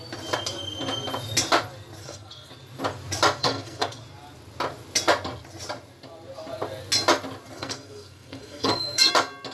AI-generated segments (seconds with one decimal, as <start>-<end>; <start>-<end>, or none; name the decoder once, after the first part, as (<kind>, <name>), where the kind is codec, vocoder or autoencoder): 2.0-2.5 (codec, SNAC); 3.4-4.0; 7.5-9.1